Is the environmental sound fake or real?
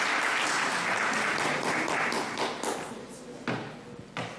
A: real